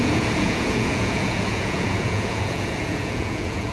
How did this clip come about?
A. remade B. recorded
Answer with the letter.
A